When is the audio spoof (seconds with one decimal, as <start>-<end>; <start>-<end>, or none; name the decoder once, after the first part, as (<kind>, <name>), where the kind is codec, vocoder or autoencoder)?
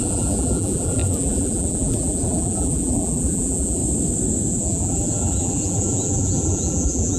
0.0-3.8 (vocoder, BigVGAN v2); 4.5-7.2